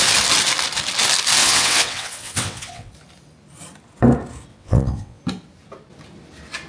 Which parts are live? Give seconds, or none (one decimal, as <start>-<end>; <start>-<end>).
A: 0.0-1.4; 2.9-4.5; 5.2-6.7